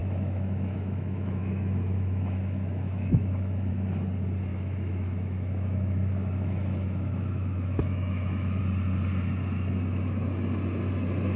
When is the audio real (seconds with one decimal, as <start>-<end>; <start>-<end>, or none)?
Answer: 3.7-4.5; 8.6-11.4